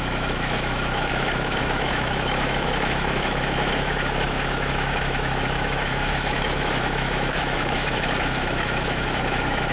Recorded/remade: remade